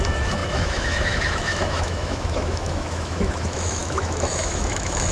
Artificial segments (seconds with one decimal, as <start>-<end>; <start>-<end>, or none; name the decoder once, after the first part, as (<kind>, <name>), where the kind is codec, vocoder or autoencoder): 0.0-5.1 (autoencoder, DAC-VAE)